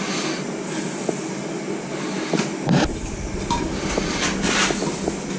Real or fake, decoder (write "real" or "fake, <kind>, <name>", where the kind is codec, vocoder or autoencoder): real